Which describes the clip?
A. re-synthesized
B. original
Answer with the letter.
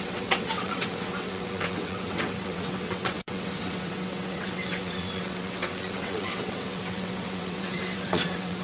A